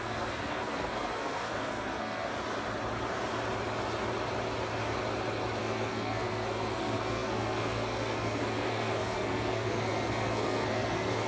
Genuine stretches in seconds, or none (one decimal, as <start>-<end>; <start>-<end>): 2.3-5.6